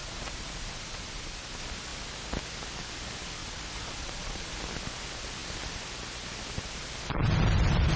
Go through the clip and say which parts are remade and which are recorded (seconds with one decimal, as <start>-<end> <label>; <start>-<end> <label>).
0.0-1.4 remade; 1.4-3.4 recorded; 3.4-4.5 remade; 4.5-8.0 recorded

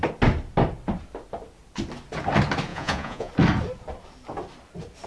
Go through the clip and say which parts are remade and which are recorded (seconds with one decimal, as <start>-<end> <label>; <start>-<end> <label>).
0.0-2.7 recorded; 2.7-3.3 remade; 3.3-5.1 recorded